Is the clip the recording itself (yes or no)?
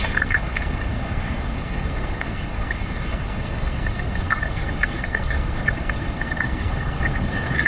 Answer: no